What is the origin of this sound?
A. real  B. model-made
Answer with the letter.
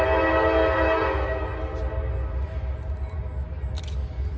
A